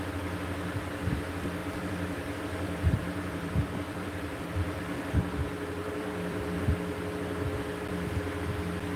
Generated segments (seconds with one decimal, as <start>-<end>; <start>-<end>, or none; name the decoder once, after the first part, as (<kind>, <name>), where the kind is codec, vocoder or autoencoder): 1.6-4.8 (vocoder, BigVGAN v2); 5.8-6.6